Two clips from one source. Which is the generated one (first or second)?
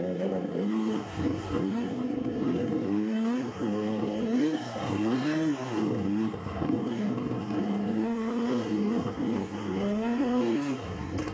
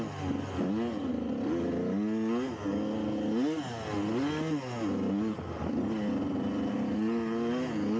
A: first